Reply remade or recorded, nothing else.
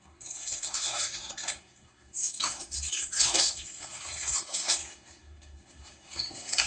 remade